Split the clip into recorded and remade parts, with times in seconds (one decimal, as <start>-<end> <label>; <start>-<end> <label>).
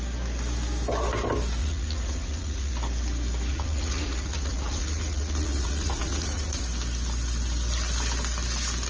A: 0.0-1.6 recorded; 1.6-2.7 remade; 2.7-3.5 recorded; 3.5-6.6 remade; 6.6-8.9 recorded